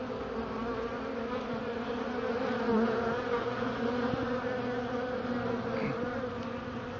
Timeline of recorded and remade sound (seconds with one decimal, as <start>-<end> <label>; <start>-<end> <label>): 0.0-2.7 recorded; 2.7-3.7 remade; 3.7-7.0 recorded